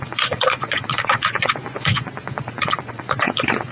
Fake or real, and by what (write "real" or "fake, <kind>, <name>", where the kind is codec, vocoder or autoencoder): fake, vocoder, Vocos